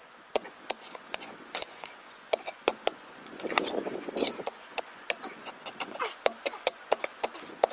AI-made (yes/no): yes